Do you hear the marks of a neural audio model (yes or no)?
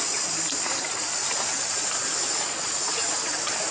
no